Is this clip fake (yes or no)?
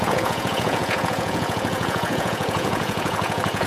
yes